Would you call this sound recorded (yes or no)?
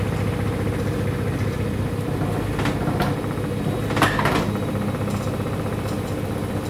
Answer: yes